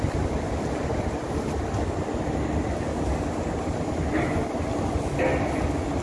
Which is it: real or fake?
real